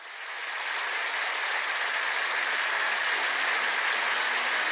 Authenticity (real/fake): real